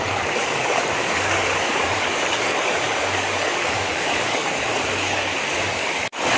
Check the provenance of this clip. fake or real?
fake